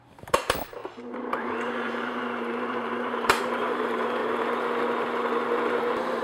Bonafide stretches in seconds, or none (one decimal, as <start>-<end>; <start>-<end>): 4.2-5.8